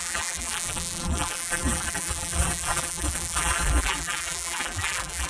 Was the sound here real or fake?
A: fake